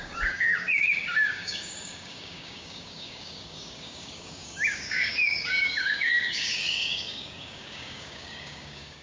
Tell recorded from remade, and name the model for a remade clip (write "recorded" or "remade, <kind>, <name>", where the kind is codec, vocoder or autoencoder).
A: remade, codec, DAC